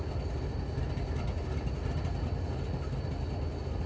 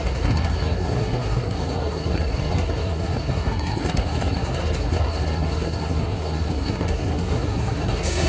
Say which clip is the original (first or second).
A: first